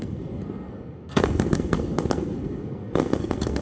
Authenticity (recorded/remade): remade